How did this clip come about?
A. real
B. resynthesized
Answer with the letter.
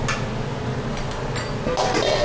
A